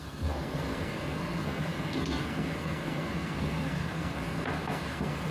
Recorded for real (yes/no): no